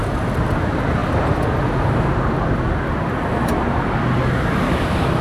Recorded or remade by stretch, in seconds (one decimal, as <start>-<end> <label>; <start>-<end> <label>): 0.0-5.2 recorded